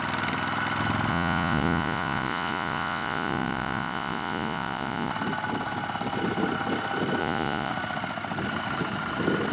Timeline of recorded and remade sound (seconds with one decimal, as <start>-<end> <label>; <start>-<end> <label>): 0.0-1.1 recorded; 1.1-5.1 remade; 5.1-7.2 recorded; 7.2-7.7 remade; 7.7-9.5 recorded